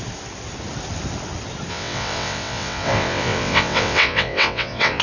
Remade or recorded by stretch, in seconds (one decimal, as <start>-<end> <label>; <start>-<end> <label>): 0.0-1.7 recorded; 1.7-5.0 remade